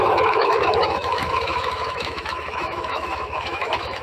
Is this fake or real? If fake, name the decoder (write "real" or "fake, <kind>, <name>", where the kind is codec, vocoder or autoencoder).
fake, autoencoder, DAC-VAE